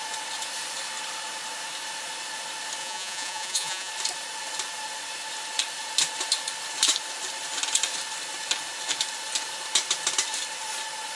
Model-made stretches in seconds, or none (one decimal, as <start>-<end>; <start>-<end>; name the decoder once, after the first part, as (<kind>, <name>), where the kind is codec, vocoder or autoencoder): 2.8-3.9 (vocoder, Vocos)